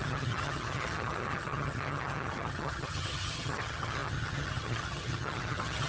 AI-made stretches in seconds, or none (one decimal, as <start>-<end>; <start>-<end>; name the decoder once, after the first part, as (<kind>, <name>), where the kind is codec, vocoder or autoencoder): 0.0-5.9 (vocoder, HiFi-GAN)